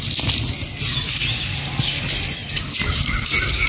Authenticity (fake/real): real